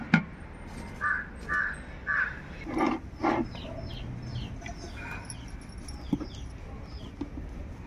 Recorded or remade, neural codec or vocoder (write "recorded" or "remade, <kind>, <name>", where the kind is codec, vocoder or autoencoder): recorded